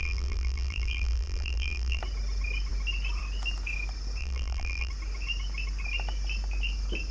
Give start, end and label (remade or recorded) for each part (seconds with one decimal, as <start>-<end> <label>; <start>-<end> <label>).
0.0-2.0 remade; 2.0-4.2 recorded; 4.2-4.9 remade; 4.9-7.1 recorded